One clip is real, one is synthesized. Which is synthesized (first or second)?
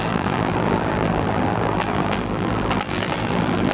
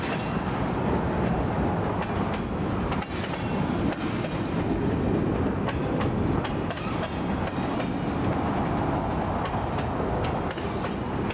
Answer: first